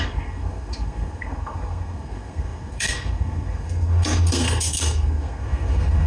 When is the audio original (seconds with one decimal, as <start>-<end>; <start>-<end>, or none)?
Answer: none